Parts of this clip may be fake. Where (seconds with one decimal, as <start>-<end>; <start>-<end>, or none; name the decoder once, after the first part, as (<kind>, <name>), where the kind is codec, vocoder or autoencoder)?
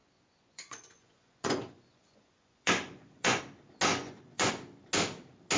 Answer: 0.0-3.4 (vocoder, Vocos); 3.9-4.5